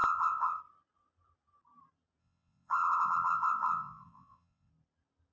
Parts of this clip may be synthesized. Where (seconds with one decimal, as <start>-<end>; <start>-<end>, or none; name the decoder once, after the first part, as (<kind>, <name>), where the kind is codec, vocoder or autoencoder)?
0.0-0.6 (vocoder, WaveNeXt); 2.2-4.7